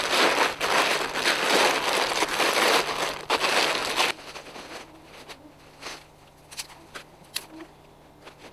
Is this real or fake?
real